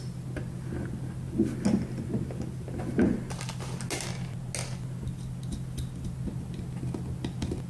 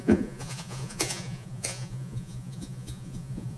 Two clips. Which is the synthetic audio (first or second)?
second